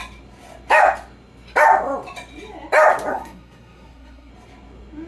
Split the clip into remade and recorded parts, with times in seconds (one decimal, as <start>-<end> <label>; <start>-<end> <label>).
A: 0.0-3.1 recorded; 3.1-4.3 remade; 4.3-5.1 recorded